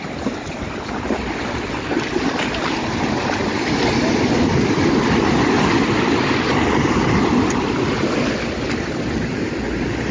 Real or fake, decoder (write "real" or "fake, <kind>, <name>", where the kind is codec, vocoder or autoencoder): real